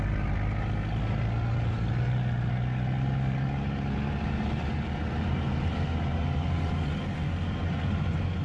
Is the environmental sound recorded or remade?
recorded